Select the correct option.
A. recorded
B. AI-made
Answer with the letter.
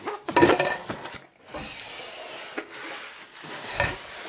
A